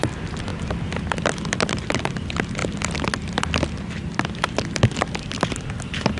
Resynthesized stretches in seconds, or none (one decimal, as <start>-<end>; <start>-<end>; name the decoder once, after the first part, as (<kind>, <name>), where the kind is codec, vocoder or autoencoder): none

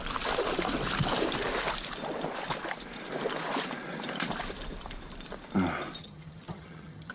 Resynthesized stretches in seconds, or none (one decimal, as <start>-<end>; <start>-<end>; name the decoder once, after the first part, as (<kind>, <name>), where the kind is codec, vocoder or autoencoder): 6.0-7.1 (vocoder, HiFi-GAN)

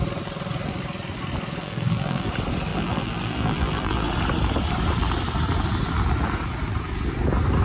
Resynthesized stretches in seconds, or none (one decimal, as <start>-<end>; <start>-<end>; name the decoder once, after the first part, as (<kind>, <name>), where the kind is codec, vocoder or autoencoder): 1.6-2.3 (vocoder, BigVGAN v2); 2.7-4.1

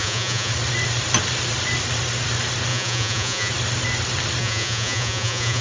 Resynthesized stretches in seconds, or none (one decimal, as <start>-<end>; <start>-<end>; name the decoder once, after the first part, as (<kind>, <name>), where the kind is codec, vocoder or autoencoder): 0.0-0.5 (vocoder, Vocos); 2.7-3.5; 4.4-5.6

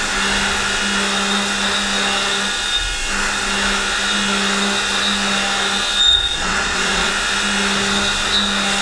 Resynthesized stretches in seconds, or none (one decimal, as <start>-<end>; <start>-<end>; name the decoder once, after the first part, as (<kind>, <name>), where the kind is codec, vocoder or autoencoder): 6.1-7.1 (vocoder, Vocos)

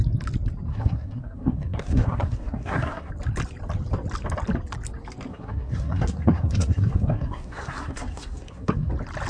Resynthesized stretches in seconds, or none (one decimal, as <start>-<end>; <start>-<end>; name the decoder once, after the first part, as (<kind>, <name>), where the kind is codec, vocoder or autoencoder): 0.7-3.1 (codec, SNAC); 5.3-8.9